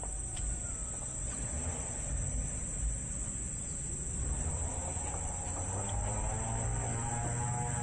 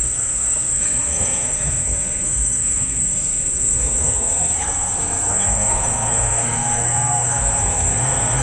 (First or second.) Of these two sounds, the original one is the first